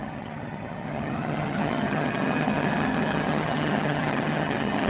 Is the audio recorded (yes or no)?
no